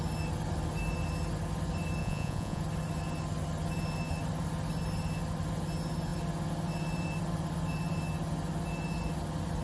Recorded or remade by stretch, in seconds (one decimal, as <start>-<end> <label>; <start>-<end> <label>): 0.0-2.0 recorded; 2.0-2.6 remade; 2.6-9.6 recorded